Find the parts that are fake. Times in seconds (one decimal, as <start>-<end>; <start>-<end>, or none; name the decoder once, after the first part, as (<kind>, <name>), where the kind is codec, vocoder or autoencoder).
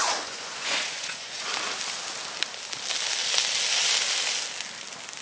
0.0-1.5 (vocoder, Vocos)